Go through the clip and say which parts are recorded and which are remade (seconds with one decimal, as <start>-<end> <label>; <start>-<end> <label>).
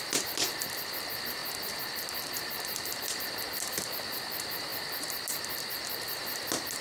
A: 0.0-6.8 recorded